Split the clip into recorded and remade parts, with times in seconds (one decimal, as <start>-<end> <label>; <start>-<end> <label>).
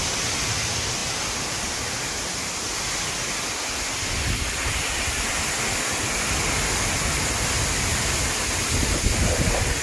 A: 0.0-9.8 recorded